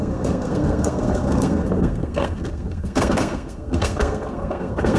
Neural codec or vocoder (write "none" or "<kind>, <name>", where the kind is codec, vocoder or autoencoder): codec, SNAC